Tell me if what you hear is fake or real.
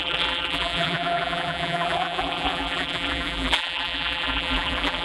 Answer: fake